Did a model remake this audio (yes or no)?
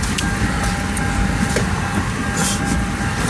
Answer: no